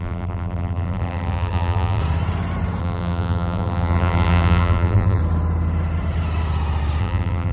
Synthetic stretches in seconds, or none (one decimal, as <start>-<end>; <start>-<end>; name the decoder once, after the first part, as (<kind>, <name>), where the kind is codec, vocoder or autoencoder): 0.0-2.0 (vocoder, BigVGAN v2); 2.8-5.2; 7.0-7.5